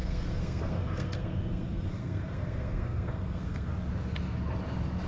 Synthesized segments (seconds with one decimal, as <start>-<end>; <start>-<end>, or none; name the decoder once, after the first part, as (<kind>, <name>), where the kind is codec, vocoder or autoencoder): 0.0-3.7 (codec, SNAC)